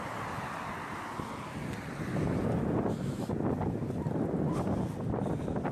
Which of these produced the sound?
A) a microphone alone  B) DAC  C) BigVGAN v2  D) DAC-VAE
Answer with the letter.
A